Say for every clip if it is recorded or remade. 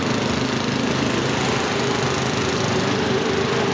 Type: recorded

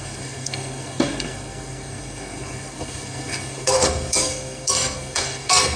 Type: remade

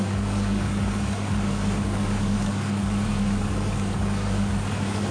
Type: remade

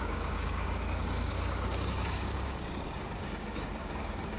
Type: remade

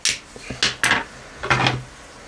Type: recorded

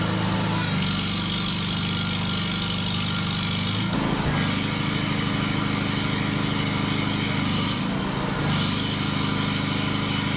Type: recorded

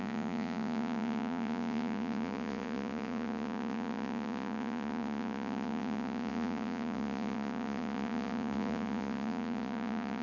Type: remade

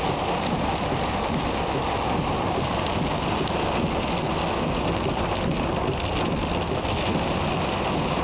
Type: recorded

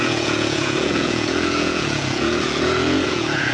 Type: remade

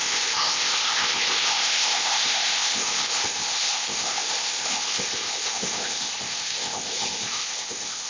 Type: remade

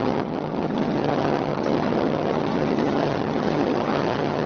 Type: remade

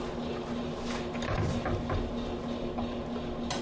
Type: recorded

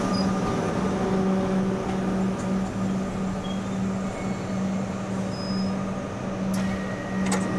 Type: recorded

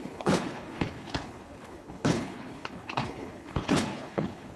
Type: remade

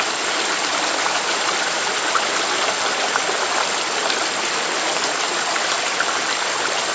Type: recorded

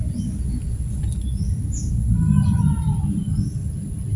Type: recorded